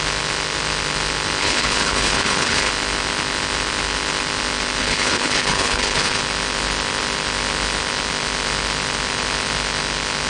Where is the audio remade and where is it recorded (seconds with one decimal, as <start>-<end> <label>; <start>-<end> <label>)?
0.0-1.4 recorded; 1.4-2.7 remade; 2.7-4.8 recorded; 4.8-6.2 remade; 6.2-10.3 recorded